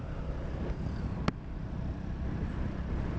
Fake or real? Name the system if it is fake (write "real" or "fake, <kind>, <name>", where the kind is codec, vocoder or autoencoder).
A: real